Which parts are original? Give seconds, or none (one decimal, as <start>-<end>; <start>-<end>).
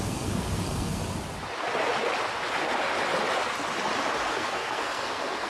1.0-4.3